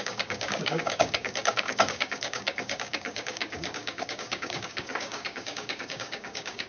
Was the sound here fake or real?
fake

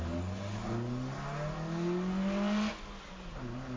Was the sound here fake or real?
real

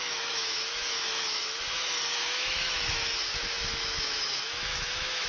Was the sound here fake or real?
fake